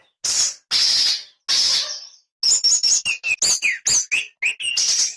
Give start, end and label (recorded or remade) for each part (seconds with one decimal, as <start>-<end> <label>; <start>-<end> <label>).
0.0-5.2 recorded